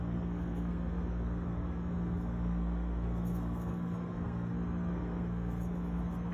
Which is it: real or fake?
fake